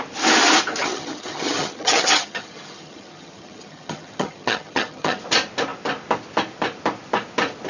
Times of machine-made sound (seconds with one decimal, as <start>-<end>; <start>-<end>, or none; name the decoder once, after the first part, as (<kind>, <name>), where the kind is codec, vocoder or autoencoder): 0.8-5.2 (vocoder, HiFi-GAN)